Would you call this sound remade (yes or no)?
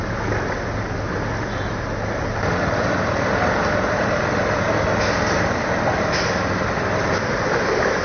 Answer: no